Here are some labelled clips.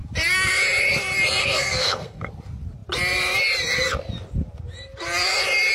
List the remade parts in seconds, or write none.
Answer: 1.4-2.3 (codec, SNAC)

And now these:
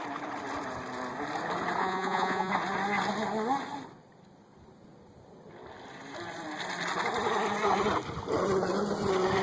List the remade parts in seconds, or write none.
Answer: 1.8-2.5 (vocoder, Vocos)

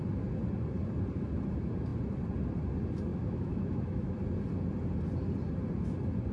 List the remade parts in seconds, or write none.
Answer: 3.1-4.2 (autoencoder, DAC-VAE)

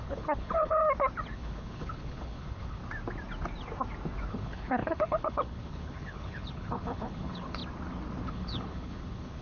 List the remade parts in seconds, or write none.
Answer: 0.0-0.8 (codec, HILCodec); 1.3-2.8; 4.3-7.6; 8.3-9.4